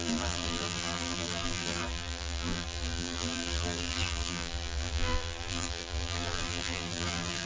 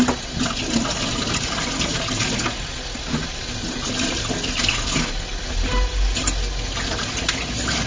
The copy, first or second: first